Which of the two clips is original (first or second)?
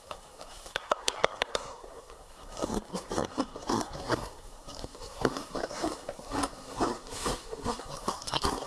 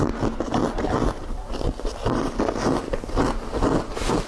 second